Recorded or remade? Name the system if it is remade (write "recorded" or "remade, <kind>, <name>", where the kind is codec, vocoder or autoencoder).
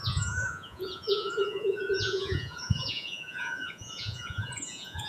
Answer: remade, vocoder, Vocos